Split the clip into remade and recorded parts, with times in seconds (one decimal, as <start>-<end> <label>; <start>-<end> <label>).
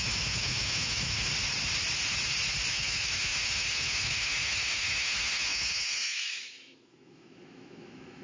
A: 0.0-1.3 remade; 1.3-2.7 recorded; 2.7-8.2 remade